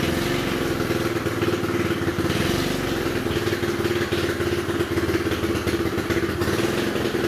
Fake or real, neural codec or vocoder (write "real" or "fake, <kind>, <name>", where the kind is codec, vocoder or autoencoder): real